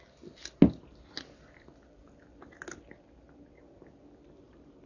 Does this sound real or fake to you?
real